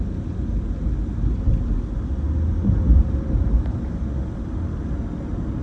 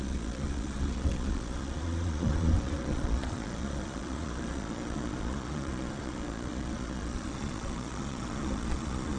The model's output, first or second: second